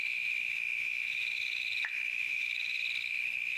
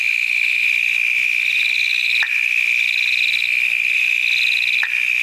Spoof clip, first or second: first